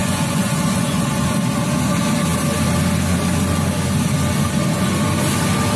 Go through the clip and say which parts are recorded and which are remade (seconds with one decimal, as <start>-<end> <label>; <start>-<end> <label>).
0.0-1.2 remade; 1.2-5.8 recorded